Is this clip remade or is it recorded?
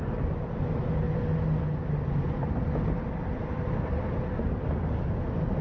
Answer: recorded